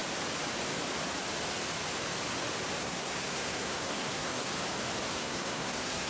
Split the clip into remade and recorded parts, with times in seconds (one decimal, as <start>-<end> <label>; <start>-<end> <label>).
0.0-2.8 recorded; 2.8-4.5 remade; 4.5-5.1 recorded; 5.1-6.1 remade